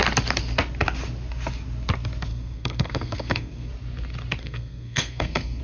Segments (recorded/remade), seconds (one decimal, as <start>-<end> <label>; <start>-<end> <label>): 0.0-2.3 recorded; 2.3-3.7 remade; 3.7-4.4 recorded; 4.4-5.6 remade